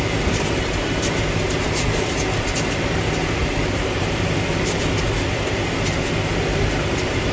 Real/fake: fake